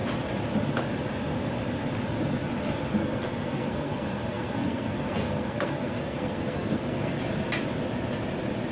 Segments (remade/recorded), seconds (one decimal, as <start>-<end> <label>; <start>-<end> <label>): 0.0-3.0 recorded; 3.0-7.2 remade; 7.2-8.7 recorded